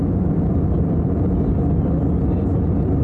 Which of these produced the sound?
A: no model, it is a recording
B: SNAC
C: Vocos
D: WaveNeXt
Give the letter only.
A